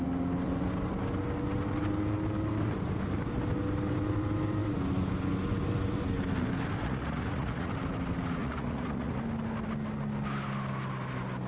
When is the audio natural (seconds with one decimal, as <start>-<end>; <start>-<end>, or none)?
0.0-6.8; 7.7-8.4; 9.2-11.5